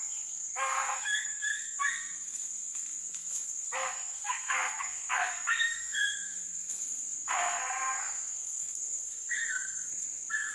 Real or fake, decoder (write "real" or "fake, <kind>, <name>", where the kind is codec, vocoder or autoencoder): fake, codec, SNAC